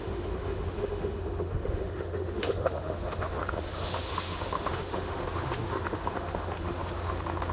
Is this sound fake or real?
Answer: fake